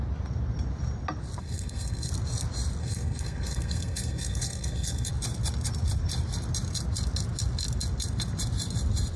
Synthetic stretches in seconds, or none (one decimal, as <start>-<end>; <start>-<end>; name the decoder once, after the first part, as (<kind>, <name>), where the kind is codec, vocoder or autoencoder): 1.4-2.1 (codec, SNAC); 2.8-5.1